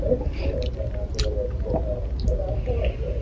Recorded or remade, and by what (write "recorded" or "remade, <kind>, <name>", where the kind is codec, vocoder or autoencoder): recorded